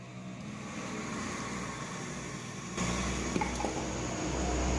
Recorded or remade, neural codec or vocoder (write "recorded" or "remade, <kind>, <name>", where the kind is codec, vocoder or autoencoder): recorded